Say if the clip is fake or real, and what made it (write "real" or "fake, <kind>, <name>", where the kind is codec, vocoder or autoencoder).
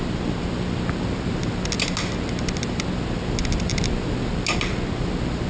real